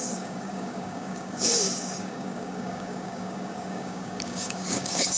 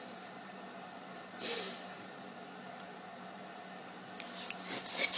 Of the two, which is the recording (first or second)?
second